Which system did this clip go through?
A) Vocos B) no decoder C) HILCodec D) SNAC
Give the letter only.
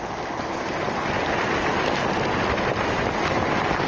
B